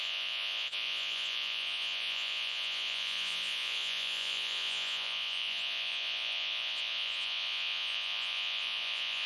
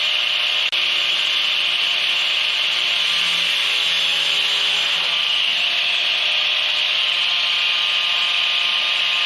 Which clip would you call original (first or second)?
second